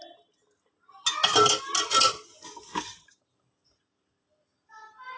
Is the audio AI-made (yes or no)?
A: no